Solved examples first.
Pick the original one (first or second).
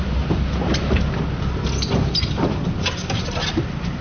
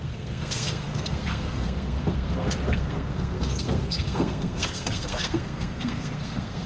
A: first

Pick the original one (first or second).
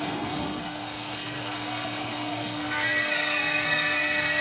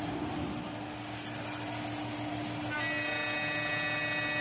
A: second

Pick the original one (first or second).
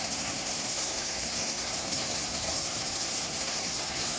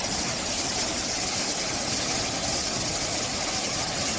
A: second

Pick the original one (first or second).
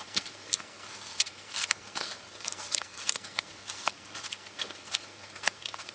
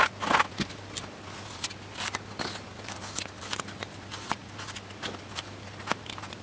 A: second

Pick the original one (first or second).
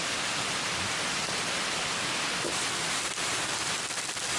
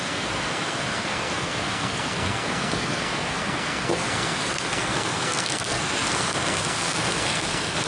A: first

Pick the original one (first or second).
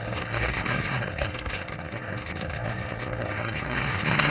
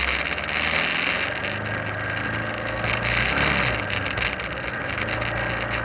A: second